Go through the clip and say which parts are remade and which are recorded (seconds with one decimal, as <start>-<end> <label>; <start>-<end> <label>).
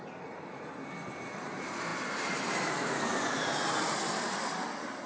0.0-5.1 recorded